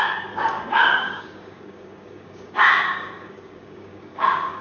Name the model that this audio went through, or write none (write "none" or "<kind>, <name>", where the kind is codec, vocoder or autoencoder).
codec, DAC